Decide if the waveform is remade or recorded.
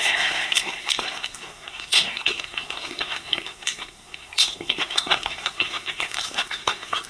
remade